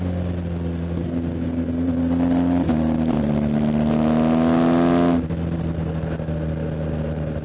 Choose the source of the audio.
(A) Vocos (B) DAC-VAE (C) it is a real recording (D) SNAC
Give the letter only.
C